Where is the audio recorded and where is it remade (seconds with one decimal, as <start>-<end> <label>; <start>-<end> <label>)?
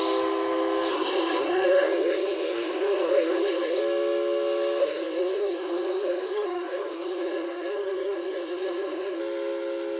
0.0-0.9 recorded; 0.9-3.8 remade; 3.8-4.8 recorded; 4.8-9.2 remade; 9.2-10.0 recorded